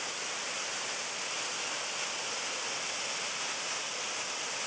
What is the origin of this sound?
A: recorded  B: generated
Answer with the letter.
A